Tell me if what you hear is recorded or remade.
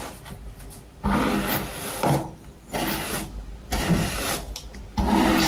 recorded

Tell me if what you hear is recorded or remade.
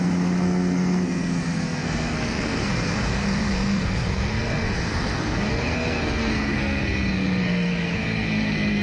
remade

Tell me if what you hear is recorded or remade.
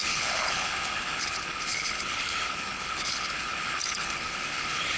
remade